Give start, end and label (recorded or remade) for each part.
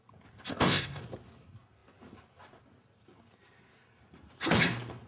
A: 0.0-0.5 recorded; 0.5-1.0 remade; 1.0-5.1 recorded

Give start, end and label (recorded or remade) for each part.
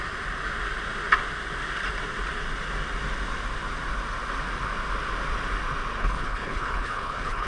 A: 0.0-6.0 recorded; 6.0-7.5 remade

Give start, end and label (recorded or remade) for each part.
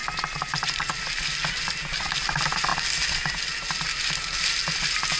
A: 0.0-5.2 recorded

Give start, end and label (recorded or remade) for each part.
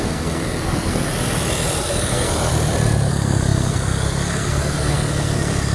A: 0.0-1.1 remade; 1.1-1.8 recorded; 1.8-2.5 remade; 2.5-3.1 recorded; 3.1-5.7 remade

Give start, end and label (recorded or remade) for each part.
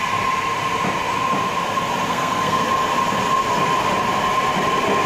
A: 0.0-2.1 recorded; 2.1-2.6 remade; 2.6-5.1 recorded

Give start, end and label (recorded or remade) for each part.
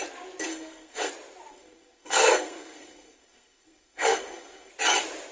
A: 0.0-0.5 recorded; 0.5-1.1 remade; 1.1-1.5 recorded; 1.5-4.7 remade; 4.7-5.3 recorded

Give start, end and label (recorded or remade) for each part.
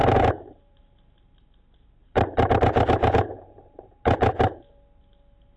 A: 0.0-1.4 remade; 1.4-2.0 recorded; 2.0-4.4 remade; 4.4-5.6 recorded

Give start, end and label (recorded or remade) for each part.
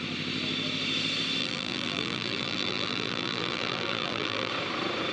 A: 0.0-1.4 recorded; 1.4-4.5 remade; 4.5-5.1 recorded